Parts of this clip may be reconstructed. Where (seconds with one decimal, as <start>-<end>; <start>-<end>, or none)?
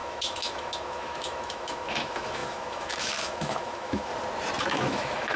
0.0-4.1; 4.6-5.4